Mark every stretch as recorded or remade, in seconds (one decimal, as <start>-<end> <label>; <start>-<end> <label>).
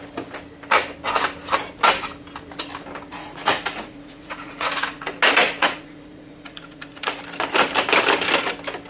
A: 0.0-3.1 recorded; 3.1-5.1 remade; 5.1-5.6 recorded; 5.6-7.2 remade; 7.2-8.9 recorded